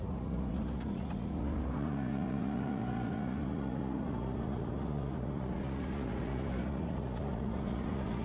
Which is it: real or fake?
fake